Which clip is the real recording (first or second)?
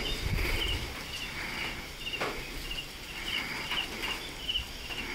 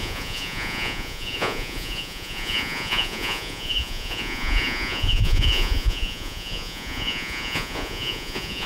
first